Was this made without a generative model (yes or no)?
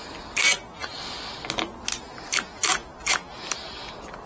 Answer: yes